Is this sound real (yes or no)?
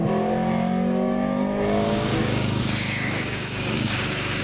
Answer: no